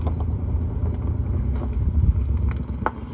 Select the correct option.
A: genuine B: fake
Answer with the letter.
A